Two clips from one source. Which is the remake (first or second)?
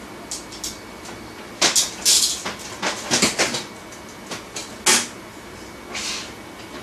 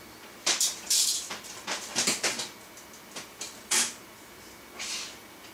second